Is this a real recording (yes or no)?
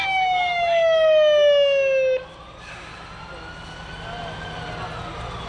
yes